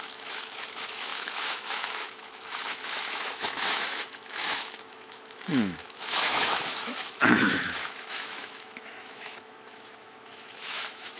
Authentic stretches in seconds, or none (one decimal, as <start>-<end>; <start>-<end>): none